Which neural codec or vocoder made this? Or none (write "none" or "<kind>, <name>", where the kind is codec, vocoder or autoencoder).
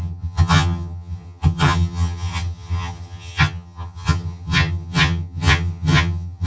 vocoder, HiFi-GAN